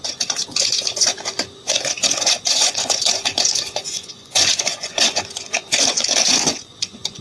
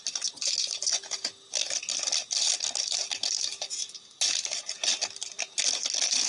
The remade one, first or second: first